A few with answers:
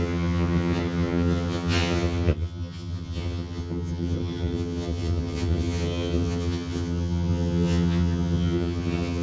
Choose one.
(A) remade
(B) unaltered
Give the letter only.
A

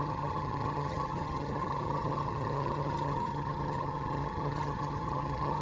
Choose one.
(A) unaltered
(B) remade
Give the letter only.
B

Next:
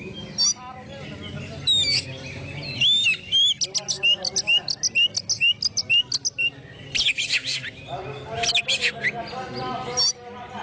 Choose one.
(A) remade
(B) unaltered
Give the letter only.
B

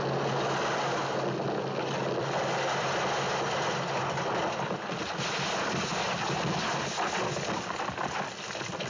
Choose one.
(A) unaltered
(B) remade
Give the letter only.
A